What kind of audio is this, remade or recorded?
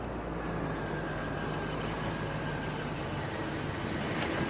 recorded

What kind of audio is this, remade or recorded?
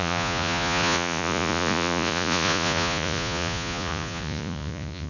remade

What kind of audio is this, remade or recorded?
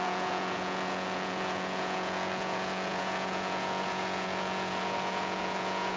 remade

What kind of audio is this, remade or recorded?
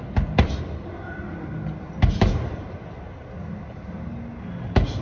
recorded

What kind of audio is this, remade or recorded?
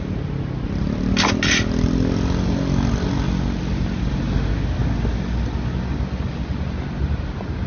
recorded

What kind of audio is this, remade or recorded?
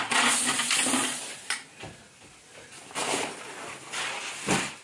recorded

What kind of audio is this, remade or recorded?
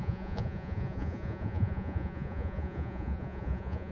remade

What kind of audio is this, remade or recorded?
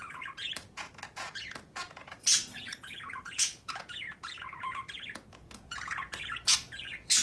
remade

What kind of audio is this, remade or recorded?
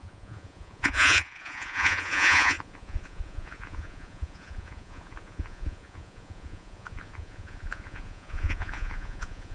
remade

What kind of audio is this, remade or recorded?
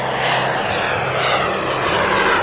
recorded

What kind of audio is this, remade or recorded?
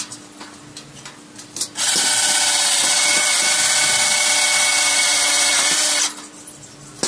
recorded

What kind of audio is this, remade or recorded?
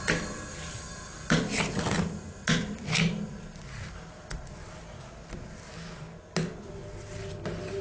recorded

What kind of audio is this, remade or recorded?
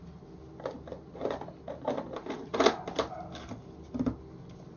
recorded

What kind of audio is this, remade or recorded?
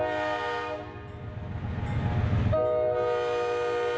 recorded